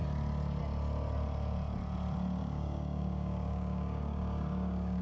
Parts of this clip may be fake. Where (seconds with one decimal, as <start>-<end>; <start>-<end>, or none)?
2.4-5.0